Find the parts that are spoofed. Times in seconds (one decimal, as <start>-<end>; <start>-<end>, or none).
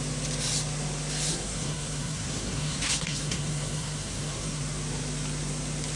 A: 1.3-4.6